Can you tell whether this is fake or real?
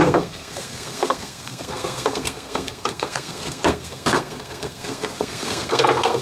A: fake